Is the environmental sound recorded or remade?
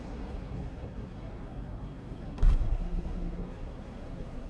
remade